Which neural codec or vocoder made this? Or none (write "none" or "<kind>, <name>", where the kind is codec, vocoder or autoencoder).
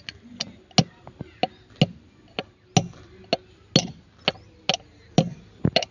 none